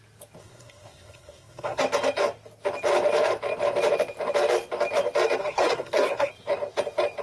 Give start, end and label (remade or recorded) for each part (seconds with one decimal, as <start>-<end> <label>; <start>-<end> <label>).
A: 0.0-0.4 recorded; 0.4-1.8 remade; 1.8-5.4 recorded; 5.4-6.3 remade; 6.3-7.2 recorded